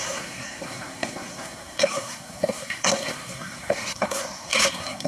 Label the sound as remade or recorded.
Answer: remade